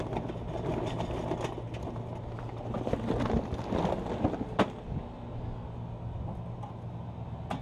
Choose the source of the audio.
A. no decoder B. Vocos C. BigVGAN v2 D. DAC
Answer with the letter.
A